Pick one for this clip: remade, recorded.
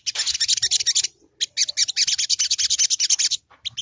recorded